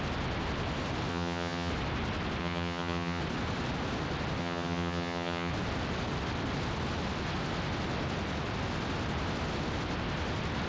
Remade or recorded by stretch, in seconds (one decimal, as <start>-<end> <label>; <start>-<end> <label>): 0.0-1.1 recorded; 1.1-1.7 remade; 1.7-2.4 recorded; 2.4-3.2 remade; 3.2-4.4 recorded; 4.4-5.5 remade; 5.5-10.7 recorded